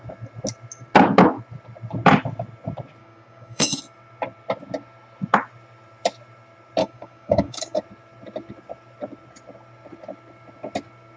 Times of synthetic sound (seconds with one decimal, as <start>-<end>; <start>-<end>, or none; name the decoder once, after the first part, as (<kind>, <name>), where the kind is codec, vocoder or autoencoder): 3.0-3.8 (codec, DAC); 6.8-7.8